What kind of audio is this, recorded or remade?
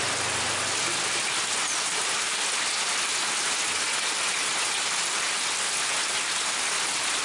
recorded